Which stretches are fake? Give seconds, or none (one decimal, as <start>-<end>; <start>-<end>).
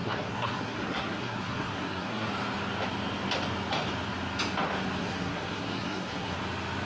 0.0-2.3; 5.0-6.4